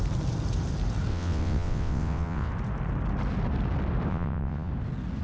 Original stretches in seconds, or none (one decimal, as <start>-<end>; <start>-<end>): 0.0-1.1; 2.5-4.1; 4.7-5.2